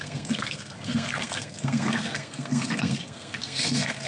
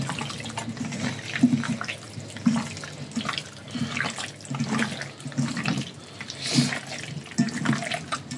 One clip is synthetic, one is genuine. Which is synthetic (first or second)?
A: first